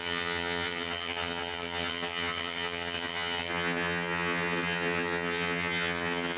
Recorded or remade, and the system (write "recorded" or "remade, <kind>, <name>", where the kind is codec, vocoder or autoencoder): remade, vocoder, HiFi-GAN